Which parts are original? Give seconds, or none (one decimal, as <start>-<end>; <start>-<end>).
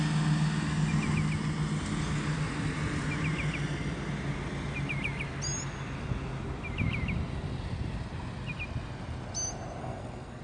0.0-9.8